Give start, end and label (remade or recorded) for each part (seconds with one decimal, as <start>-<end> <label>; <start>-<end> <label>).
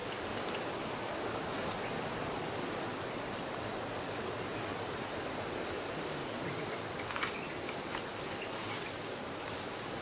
0.0-6.2 recorded; 6.2-9.5 remade; 9.5-10.0 recorded